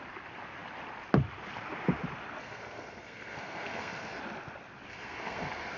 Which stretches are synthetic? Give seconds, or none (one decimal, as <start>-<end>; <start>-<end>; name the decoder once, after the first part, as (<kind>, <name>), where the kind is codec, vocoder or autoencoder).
2.4-4.2 (codec, SNAC); 4.9-5.8